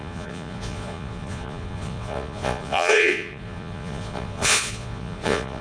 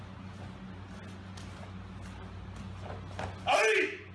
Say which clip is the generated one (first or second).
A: first